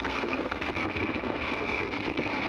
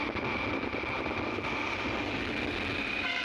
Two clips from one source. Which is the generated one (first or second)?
first